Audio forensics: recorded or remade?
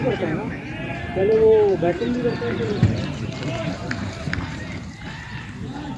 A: remade